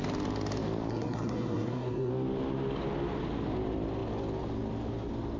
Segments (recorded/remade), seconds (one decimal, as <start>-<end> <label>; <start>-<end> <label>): 0.0-0.9 recorded; 0.9-2.1 remade; 2.1-5.4 recorded